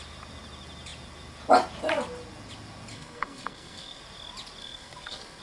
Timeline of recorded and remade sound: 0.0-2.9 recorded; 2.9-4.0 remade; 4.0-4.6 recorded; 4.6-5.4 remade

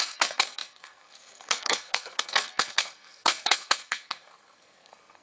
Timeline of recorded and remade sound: 0.0-5.2 remade

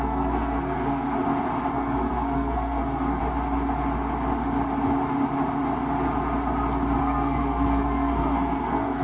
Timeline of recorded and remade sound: 0.0-1.2 remade; 1.2-1.7 recorded; 1.7-3.2 remade; 3.2-7.0 recorded; 7.0-9.0 remade

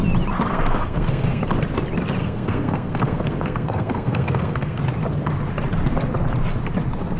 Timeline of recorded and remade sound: 0.0-0.5 recorded; 0.5-1.4 remade; 1.4-2.2 recorded; 2.2-4.8 remade; 4.8-7.2 recorded

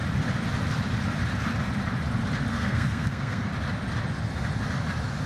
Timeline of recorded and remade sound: 0.0-2.5 recorded; 2.5-3.5 remade; 3.5-5.3 recorded